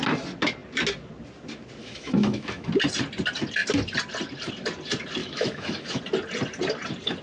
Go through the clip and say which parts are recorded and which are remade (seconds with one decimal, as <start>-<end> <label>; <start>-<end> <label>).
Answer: 0.0-1.8 recorded; 1.8-2.7 remade; 2.7-5.2 recorded; 5.2-6.0 remade; 6.0-7.2 recorded